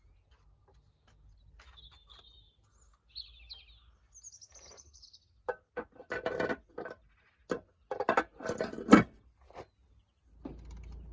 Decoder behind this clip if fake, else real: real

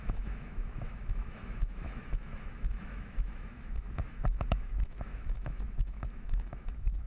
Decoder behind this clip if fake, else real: fake, autoencoder, DAC-VAE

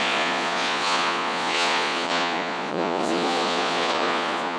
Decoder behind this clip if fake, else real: fake, vocoder, Vocos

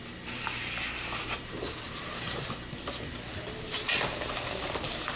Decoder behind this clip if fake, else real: real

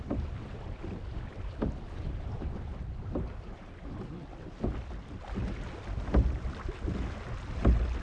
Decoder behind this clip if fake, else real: real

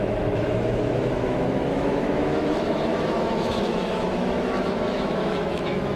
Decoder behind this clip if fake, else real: fake, autoencoder, DAC-VAE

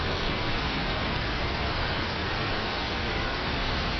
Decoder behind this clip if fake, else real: fake, codec, SNAC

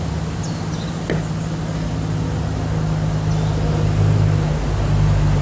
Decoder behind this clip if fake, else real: real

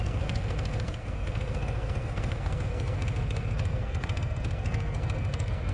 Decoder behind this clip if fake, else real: fake, codec, SNAC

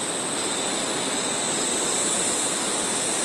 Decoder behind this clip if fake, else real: real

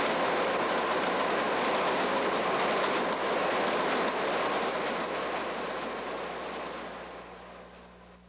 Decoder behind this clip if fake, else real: real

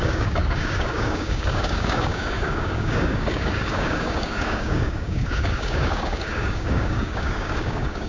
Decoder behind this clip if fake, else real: fake, codec, DAC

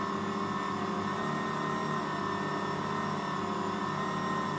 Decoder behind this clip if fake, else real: real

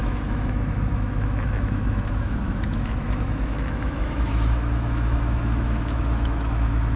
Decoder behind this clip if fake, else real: fake, autoencoder, DAC-VAE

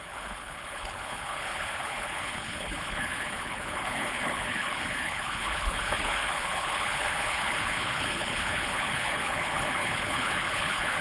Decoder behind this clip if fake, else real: fake, codec, HILCodec